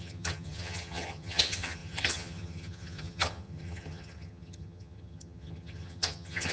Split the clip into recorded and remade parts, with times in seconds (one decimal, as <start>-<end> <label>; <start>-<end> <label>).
0.0-6.5 remade